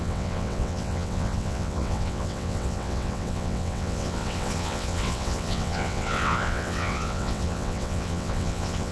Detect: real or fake fake